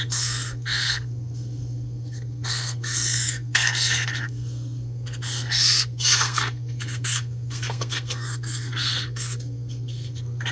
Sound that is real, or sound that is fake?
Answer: fake